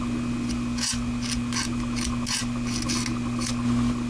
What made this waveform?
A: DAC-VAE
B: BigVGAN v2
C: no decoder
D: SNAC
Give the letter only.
C